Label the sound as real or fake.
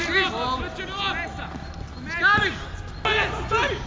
real